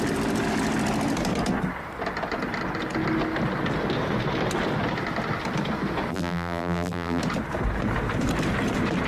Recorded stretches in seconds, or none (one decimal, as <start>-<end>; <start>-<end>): 0.0-6.1; 7.2-9.1